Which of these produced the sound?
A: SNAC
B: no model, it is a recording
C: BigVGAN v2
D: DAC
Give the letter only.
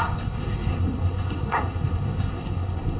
A